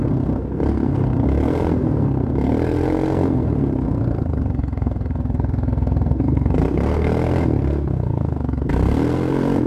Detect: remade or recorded remade